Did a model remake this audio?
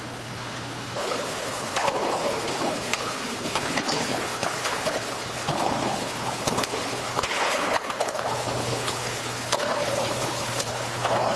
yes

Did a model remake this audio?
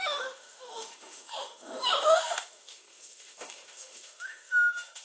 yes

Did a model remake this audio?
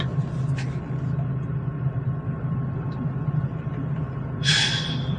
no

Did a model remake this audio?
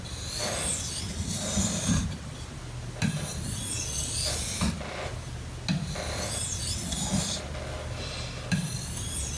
no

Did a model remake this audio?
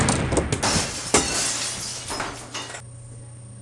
no